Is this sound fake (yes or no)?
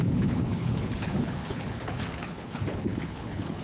yes